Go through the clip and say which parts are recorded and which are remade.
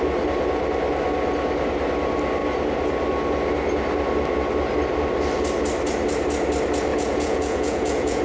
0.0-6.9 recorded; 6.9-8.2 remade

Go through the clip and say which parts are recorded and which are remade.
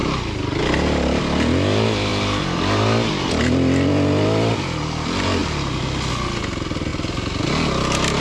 0.0-8.2 recorded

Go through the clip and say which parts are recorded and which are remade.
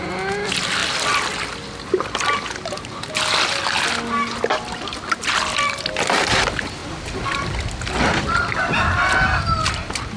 0.0-10.2 recorded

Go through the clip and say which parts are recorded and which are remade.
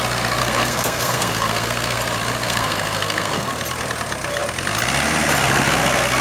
0.0-0.4 recorded; 0.4-2.0 remade; 2.0-2.4 recorded; 2.4-3.5 remade; 3.5-6.2 recorded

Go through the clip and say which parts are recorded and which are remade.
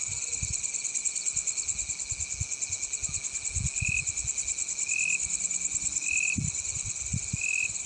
0.0-7.9 recorded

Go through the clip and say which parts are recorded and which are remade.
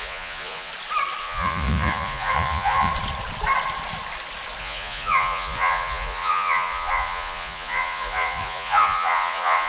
0.0-0.7 remade; 0.7-1.2 recorded; 1.2-2.9 remade; 2.9-4.6 recorded; 4.6-9.7 remade